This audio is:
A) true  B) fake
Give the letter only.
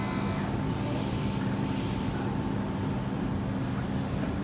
A